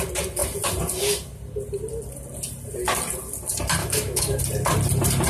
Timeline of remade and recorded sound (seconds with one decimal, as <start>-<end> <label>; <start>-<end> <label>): 0.0-3.8 recorded; 3.8-4.4 remade; 4.4-5.3 recorded

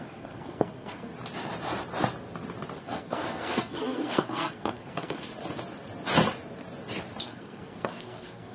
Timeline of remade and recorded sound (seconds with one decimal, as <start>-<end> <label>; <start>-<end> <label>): 0.0-1.1 remade; 1.1-2.8 recorded; 2.8-5.3 remade; 5.3-7.2 recorded; 7.2-8.5 remade

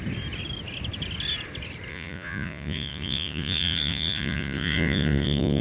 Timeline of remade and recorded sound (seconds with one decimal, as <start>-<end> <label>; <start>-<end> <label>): 0.0-1.9 recorded; 1.9-5.6 remade

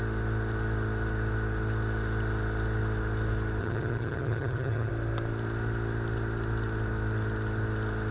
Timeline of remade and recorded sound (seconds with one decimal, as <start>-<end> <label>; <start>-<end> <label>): 0.0-3.6 recorded; 3.6-4.9 remade; 4.9-8.1 recorded

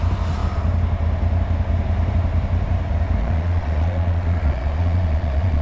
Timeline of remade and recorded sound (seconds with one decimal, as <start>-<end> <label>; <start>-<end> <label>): 0.0-3.2 recorded; 3.2-5.6 remade

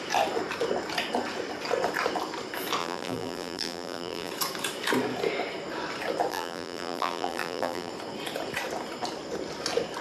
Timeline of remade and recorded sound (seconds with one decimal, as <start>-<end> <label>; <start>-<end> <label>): 0.0-2.8 recorded; 2.8-4.3 remade; 4.3-6.3 recorded; 6.3-7.9 remade; 7.9-10.0 recorded

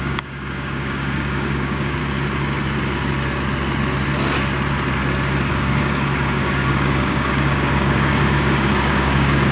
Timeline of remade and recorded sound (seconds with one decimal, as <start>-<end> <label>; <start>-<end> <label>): 0.0-2.0 remade; 2.0-5.5 recorded; 5.5-9.5 remade

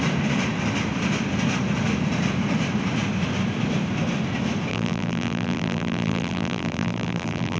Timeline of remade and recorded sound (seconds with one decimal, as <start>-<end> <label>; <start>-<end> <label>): 0.0-4.7 recorded; 4.7-7.6 remade